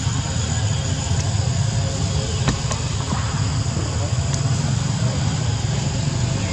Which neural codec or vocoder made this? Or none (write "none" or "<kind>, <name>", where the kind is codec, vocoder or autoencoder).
none